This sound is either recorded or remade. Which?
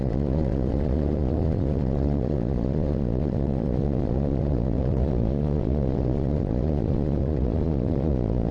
remade